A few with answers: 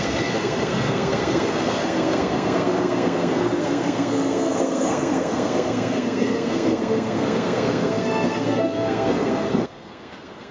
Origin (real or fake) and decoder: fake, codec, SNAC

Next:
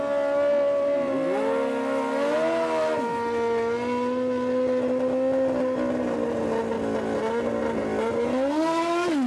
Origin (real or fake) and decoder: real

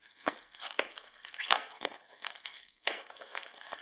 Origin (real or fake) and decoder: fake, codec, SNAC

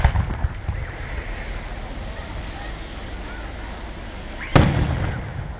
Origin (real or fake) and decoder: real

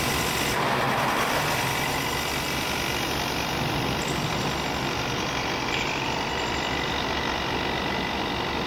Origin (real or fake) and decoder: real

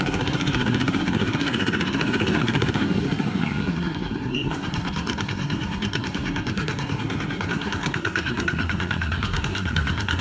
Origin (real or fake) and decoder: fake, codec, SNAC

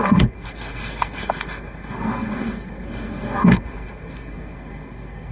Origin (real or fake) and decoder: fake, codec, SNAC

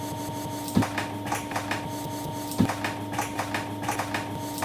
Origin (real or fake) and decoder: real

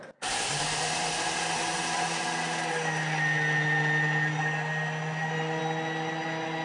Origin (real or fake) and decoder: real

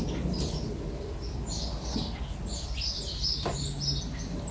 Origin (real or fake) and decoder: real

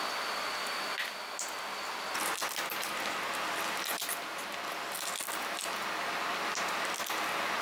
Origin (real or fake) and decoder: real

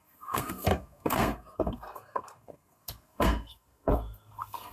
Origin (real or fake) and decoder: fake, codec, SNAC